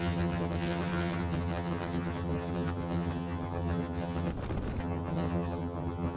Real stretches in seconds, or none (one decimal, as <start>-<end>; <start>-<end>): 4.3-4.8